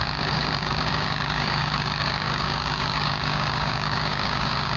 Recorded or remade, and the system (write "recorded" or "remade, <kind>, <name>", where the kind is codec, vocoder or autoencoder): remade, codec, DAC